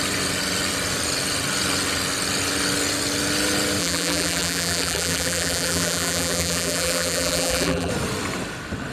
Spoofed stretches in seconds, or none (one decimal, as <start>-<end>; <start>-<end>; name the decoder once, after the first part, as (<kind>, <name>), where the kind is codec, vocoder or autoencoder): 3.8-7.9 (vocoder, BigVGAN v2)